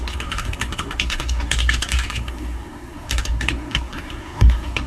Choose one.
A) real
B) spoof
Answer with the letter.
B